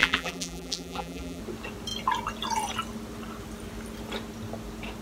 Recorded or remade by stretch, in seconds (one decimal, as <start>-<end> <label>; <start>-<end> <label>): 0.0-1.4 remade; 1.4-5.0 recorded